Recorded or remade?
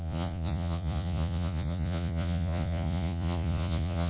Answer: remade